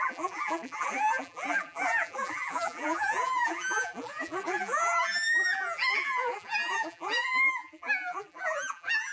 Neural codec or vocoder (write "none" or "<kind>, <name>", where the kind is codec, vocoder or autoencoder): vocoder, BigVGAN v2